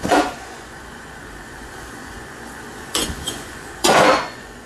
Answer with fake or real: fake